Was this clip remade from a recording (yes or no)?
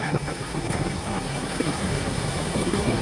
yes